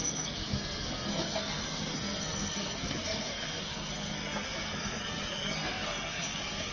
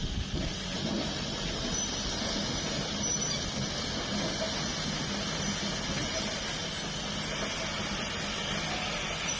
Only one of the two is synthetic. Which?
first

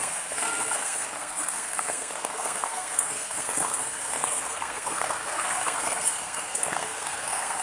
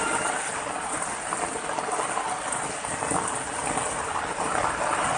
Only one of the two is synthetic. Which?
first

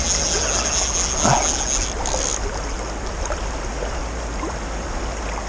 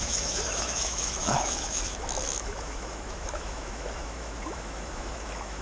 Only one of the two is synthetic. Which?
second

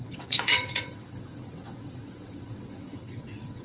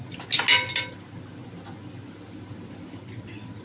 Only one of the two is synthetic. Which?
first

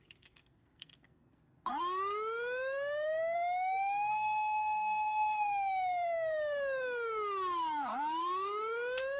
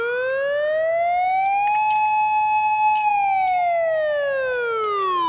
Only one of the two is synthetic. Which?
first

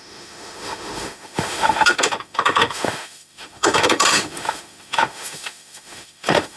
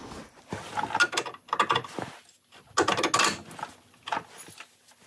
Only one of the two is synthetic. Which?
first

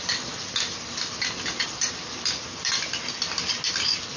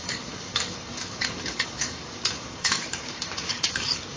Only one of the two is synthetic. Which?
second